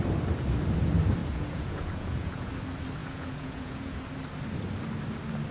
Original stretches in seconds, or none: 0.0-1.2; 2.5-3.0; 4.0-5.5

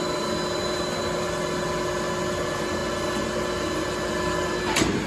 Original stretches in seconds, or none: 0.0-5.1

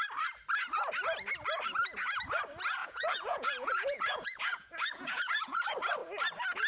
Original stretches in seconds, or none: 0.0-2.8; 5.6-6.7

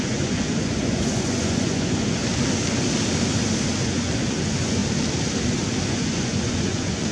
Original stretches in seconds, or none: 2.2-3.8; 4.8-5.9

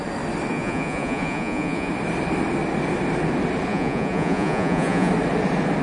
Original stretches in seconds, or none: 0.0-0.5; 1.9-3.7; 5.1-5.8

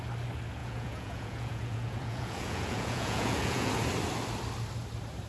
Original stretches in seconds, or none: 0.0-0.6; 3.7-5.3